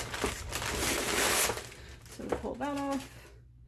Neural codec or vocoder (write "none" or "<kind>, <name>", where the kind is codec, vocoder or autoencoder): none